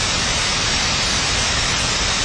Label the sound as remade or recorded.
recorded